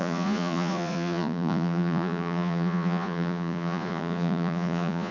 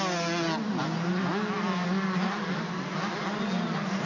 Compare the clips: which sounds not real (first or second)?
first